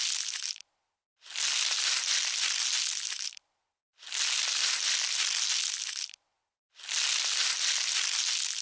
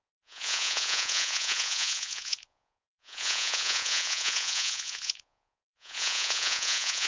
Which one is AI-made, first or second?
second